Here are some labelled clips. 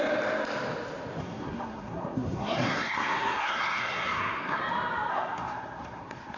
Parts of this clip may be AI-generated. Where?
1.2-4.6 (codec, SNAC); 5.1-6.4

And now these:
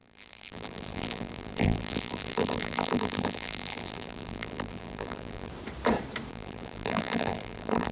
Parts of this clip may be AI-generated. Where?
0.0-5.5 (vocoder, BigVGAN v2); 6.3-7.9

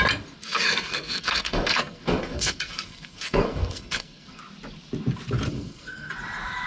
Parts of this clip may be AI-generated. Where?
0.4-4.4 (codec, SNAC); 5.5-6.1